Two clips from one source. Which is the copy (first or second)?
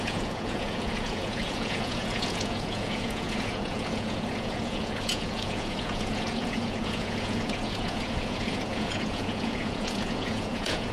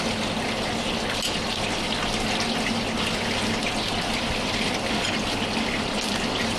first